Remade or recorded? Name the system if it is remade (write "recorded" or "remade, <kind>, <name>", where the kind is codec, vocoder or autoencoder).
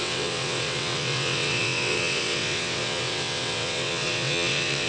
remade, vocoder, WaveNeXt